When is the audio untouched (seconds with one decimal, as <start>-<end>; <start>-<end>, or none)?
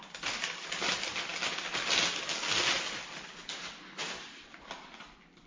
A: 0.0-5.5